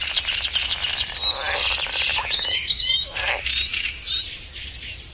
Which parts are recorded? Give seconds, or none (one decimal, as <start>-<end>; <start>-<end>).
0.0-2.1; 4.1-5.1